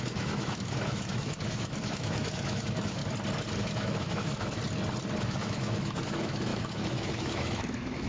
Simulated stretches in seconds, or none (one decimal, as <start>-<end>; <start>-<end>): 0.0-3.0; 3.6-4.6; 5.2-8.1